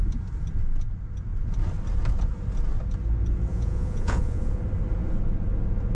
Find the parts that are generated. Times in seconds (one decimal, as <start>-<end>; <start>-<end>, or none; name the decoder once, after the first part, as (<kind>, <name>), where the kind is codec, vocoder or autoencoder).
3.5-4.6 (vocoder, Vocos)